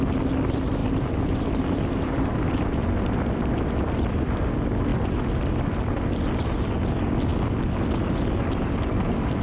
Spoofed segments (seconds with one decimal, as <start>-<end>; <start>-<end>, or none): 0.8-4.3